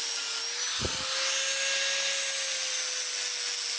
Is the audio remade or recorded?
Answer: recorded